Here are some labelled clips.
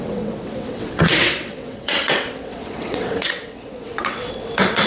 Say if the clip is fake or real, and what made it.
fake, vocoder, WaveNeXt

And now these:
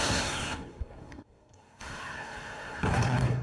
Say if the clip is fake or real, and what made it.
fake, codec, SNAC